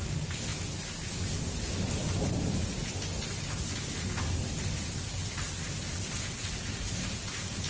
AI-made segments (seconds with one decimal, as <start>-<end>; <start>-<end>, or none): none